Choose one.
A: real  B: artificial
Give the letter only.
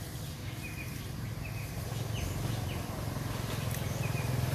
A